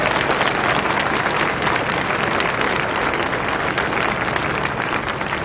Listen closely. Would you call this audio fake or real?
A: real